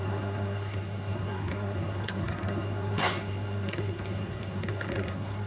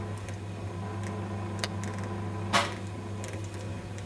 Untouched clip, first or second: second